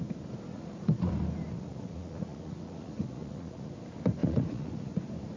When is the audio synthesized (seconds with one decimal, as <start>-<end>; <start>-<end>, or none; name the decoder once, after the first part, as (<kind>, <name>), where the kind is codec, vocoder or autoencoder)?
0.5-1.1 (vocoder, Vocos); 1.5-3.7; 4.2-5.0